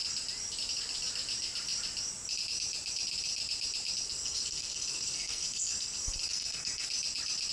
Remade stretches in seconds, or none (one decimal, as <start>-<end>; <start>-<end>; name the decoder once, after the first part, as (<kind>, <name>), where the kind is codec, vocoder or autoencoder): 4.1-6.9 (codec, SNAC)